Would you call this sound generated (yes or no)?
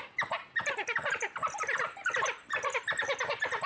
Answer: no